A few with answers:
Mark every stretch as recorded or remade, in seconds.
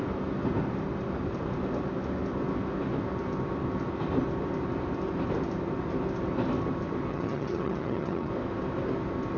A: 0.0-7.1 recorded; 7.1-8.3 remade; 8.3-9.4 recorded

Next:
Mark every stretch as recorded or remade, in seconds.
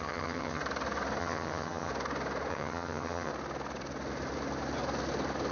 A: 0.0-0.6 remade; 0.6-1.2 recorded; 1.2-1.9 remade; 1.9-2.5 recorded; 2.5-3.3 remade; 3.3-5.5 recorded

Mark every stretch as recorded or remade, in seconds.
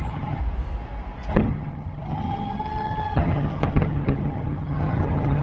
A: 0.0-0.4 remade; 0.4-1.3 recorded; 1.3-5.4 remade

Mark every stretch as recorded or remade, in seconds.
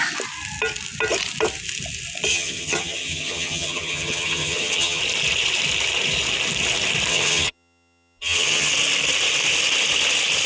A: 0.0-2.3 recorded; 2.3-5.0 remade; 5.0-7.1 recorded; 7.1-8.7 remade; 8.7-10.5 recorded